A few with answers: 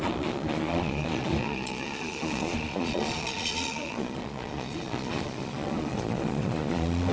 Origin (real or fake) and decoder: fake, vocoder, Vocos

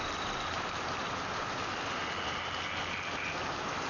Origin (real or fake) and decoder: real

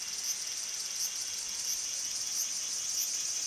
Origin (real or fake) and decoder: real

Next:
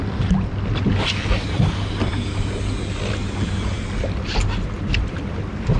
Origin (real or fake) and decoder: real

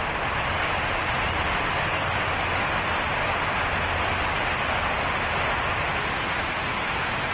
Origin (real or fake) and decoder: real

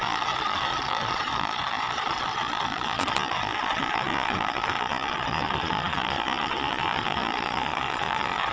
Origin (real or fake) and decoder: fake, vocoder, Vocos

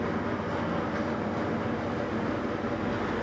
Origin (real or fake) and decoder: real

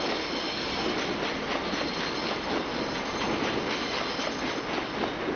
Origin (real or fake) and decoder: real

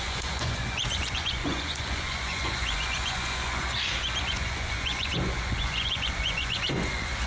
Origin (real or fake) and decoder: fake, vocoder, Vocos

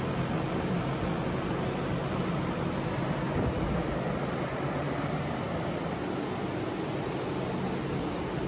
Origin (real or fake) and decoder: real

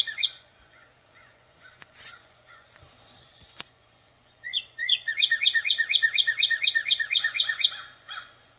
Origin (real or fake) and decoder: fake, vocoder, Vocos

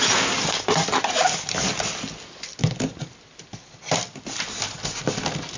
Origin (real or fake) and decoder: real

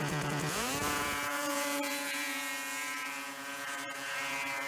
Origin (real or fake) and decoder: fake, vocoder, Vocos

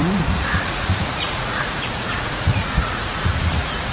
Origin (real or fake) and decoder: fake, vocoder, Vocos